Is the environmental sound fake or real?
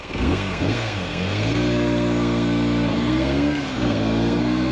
fake